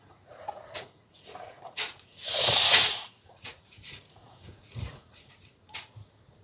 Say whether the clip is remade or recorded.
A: remade